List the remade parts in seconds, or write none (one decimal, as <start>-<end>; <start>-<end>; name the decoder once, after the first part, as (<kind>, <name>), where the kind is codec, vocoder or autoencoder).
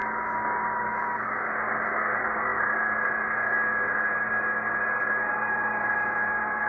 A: 0.0-6.7 (codec, DAC)